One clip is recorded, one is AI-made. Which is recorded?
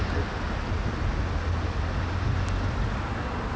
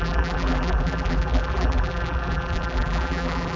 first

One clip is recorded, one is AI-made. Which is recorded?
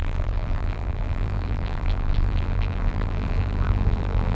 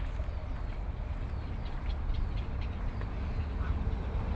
second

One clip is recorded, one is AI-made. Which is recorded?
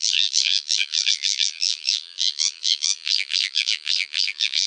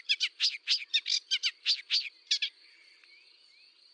second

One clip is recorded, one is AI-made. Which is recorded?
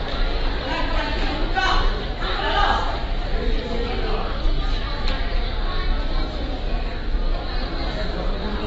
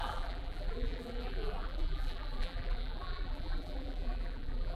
first